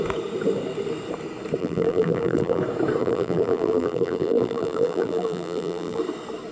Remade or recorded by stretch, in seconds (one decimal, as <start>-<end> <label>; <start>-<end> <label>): 0.0-1.6 recorded; 1.6-2.6 remade; 2.6-3.0 recorded; 3.0-6.0 remade; 6.0-6.5 recorded